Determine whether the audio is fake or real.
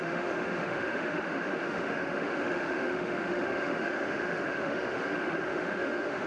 fake